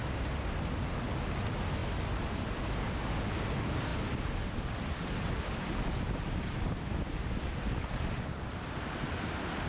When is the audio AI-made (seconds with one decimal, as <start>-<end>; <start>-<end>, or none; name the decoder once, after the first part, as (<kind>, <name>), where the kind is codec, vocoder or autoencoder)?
none